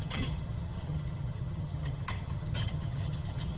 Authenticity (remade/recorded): remade